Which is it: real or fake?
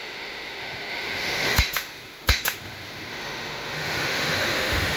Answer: fake